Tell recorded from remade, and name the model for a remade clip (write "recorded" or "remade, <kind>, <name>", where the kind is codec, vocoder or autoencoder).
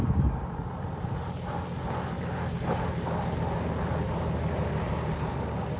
recorded